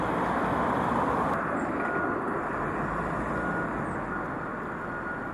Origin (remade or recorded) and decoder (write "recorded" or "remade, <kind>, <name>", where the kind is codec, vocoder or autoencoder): recorded